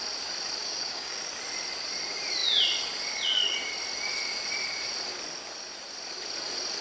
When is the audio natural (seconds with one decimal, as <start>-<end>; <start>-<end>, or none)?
0.0-0.6; 1.2-6.8